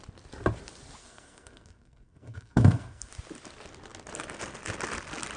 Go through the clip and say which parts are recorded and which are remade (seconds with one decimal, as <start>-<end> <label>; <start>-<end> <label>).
0.0-1.0 recorded; 1.0-3.1 remade; 3.1-5.4 recorded